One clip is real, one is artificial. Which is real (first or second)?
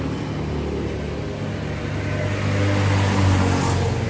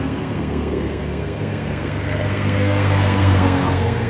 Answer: first